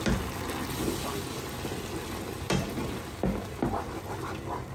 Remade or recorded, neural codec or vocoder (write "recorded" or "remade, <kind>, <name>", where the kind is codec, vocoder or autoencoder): recorded